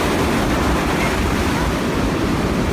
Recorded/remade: recorded